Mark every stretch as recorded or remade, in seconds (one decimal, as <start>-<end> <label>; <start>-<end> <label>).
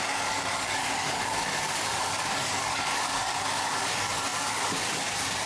0.0-5.5 remade